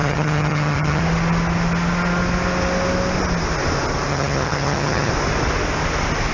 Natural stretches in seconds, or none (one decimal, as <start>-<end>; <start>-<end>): 1.0-4.1; 5.1-6.3